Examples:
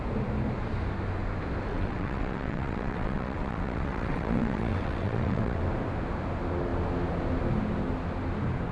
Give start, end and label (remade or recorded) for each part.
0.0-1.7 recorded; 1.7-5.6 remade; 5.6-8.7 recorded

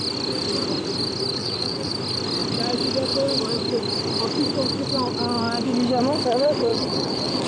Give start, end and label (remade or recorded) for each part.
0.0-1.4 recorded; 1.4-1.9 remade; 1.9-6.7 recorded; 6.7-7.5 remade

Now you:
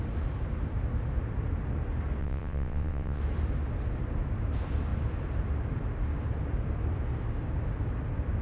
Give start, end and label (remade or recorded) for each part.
0.0-2.2 recorded; 2.2-3.2 remade; 3.2-8.4 recorded

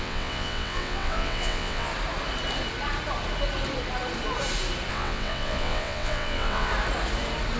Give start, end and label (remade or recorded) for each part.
0.0-1.9 remade; 1.9-4.9 recorded; 4.9-6.7 remade; 6.7-7.6 recorded

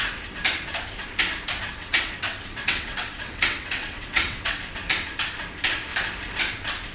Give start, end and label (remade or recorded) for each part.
0.0-1.7 recorded; 1.7-4.6 remade; 4.6-6.9 recorded